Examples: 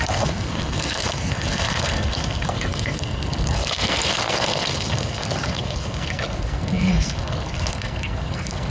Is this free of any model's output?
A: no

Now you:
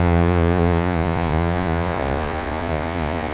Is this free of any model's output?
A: no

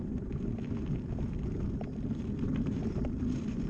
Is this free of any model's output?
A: no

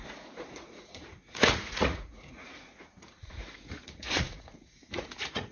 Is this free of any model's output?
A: no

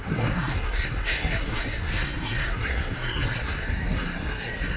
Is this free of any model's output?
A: no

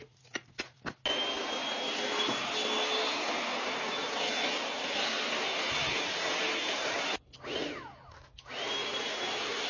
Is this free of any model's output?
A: yes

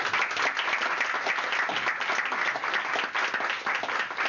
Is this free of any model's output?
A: yes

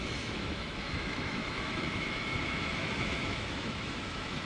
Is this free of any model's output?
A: no